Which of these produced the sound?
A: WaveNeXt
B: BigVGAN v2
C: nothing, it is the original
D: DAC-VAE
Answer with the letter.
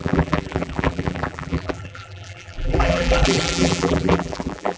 B